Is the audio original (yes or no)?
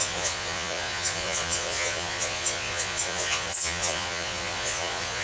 no